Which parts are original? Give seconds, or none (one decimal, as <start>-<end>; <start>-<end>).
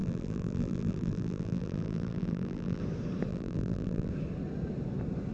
2.8-3.3; 4.1-5.3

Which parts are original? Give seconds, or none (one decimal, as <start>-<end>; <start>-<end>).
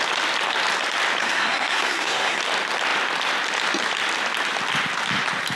0.0-1.2; 2.4-5.6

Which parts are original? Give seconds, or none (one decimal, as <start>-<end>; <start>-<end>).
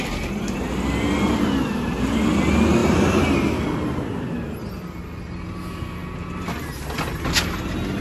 0.0-2.8; 4.0-8.0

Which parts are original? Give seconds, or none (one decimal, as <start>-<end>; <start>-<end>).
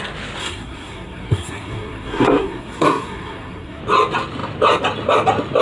0.0-0.4; 3.8-5.6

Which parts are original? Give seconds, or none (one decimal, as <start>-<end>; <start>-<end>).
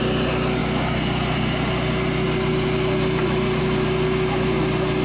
0.0-5.0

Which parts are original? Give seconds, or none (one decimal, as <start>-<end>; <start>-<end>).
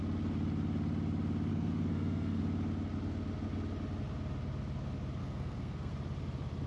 0.0-1.5; 2.4-5.2; 5.9-6.7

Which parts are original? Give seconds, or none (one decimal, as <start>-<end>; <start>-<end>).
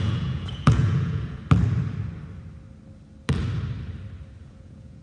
1.4-4.4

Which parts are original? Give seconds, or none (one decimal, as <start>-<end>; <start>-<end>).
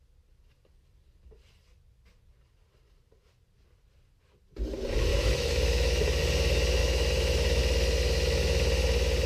0.0-5.1; 6.2-6.8; 7.6-9.3